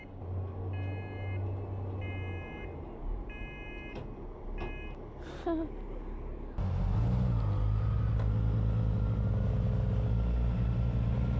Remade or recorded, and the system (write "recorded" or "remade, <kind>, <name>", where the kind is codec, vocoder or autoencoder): recorded